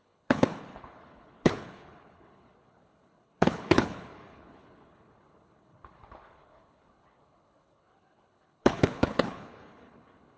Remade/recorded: remade